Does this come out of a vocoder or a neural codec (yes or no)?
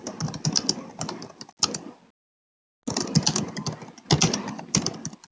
no